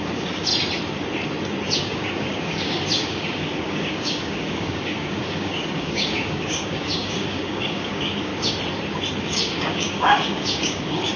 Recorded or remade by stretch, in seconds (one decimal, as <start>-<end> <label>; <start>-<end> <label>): 0.0-0.5 remade; 0.5-1.8 recorded; 1.8-8.3 remade; 8.3-9.2 recorded; 9.2-11.2 remade